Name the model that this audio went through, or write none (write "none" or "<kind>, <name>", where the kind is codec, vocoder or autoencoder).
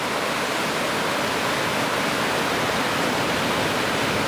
none